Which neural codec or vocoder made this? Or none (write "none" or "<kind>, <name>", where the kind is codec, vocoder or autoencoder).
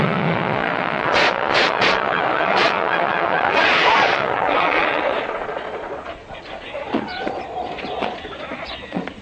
vocoder, Vocos